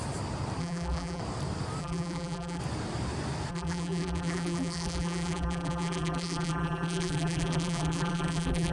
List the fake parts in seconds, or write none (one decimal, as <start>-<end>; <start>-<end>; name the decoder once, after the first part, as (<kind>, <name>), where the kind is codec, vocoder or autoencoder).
0.6-1.2 (vocoder, BigVGAN v2); 1.8-2.6; 3.5-8.7